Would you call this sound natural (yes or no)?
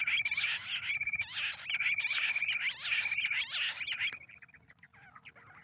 yes